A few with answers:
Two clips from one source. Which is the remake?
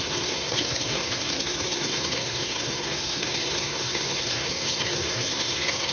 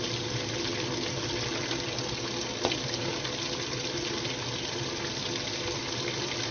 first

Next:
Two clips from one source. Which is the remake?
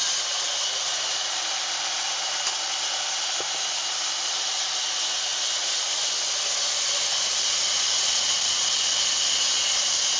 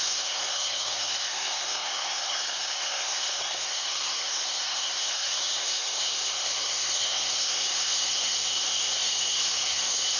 second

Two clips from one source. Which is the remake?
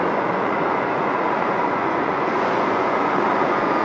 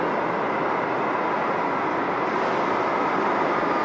first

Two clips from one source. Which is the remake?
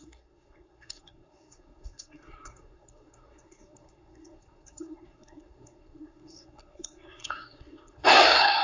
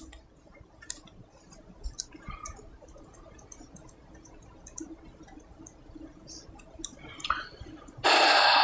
first